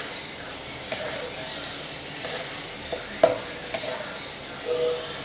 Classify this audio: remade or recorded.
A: recorded